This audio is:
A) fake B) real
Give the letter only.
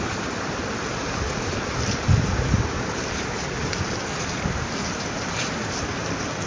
B